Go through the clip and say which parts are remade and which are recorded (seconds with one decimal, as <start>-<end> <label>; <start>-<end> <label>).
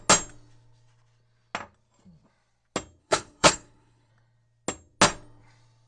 0.0-3.0 recorded; 3.0-4.1 remade; 4.1-5.9 recorded